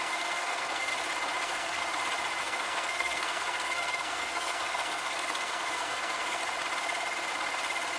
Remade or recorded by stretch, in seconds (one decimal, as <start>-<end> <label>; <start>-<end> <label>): 0.0-0.9 remade; 0.9-1.4 recorded; 1.4-1.8 remade; 1.8-2.4 recorded; 2.4-6.4 remade; 6.4-8.0 recorded

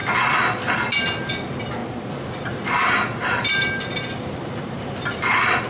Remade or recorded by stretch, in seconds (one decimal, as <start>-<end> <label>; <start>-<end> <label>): 0.0-5.7 recorded

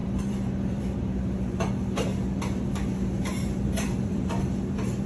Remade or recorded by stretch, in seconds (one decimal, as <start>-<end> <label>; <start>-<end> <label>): 0.0-2.1 remade; 2.1-2.7 recorded; 2.7-5.1 remade

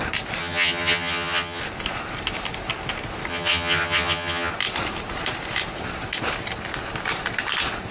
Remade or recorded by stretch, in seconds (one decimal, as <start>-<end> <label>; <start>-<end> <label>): 0.0-0.4 recorded; 0.4-1.6 remade; 1.6-3.3 recorded; 3.3-4.5 remade; 4.5-7.9 recorded

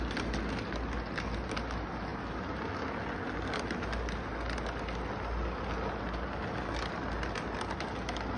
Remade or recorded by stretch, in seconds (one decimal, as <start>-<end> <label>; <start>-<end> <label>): 0.0-8.4 recorded

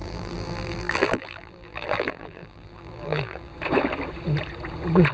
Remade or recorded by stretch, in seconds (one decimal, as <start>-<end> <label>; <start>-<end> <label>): 0.0-3.5 remade; 3.5-5.1 recorded

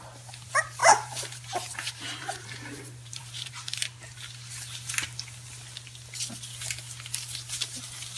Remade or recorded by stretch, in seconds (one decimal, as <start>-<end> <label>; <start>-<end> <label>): 0.0-0.8 recorded; 0.8-3.5 remade; 3.5-8.2 recorded